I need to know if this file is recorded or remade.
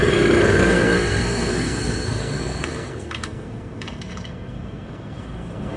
remade